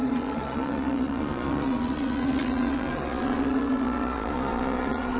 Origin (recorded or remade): remade